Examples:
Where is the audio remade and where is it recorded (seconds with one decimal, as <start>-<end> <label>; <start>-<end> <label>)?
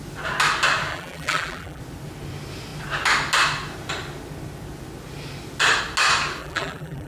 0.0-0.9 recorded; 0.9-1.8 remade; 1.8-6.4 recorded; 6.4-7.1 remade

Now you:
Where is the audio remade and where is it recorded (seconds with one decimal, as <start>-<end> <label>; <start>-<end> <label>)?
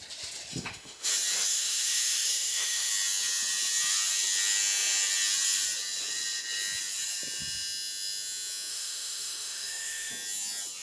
0.0-0.5 recorded; 0.5-1.1 remade; 1.1-1.5 recorded; 1.5-2.9 remade; 2.9-8.7 recorded; 8.7-10.1 remade; 10.1-10.8 recorded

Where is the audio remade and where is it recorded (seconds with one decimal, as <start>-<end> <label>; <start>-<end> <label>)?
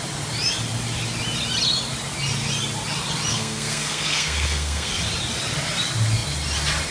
0.0-3.3 recorded; 3.3-4.9 remade; 4.9-6.9 recorded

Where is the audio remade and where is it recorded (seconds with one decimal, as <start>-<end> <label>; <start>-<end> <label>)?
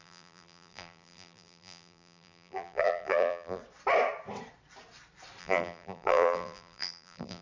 0.0-3.6 remade; 3.6-5.4 recorded; 5.4-7.4 remade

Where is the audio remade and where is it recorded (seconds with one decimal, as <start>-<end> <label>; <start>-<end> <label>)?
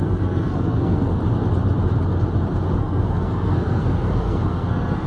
0.0-1.1 remade; 1.1-2.8 recorded; 2.8-5.1 remade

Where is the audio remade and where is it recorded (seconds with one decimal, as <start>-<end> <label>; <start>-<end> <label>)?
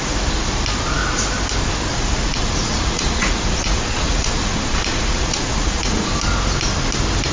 0.0-1.9 recorded; 1.9-6.1 remade; 6.1-7.3 recorded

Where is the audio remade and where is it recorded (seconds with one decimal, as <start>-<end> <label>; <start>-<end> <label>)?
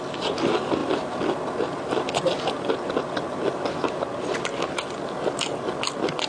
0.0-6.3 recorded